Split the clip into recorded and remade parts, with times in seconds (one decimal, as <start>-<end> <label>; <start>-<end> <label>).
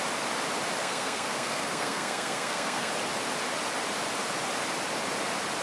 0.0-0.8 recorded; 0.8-2.9 remade; 2.9-5.6 recorded